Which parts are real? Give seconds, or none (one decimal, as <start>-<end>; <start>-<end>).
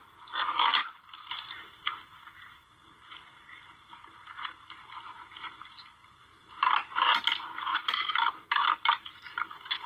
0.0-0.8; 1.3-6.0; 6.7-7.7; 8.4-9.9